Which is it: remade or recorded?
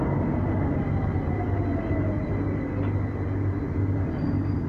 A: recorded